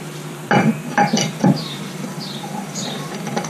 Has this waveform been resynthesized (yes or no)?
yes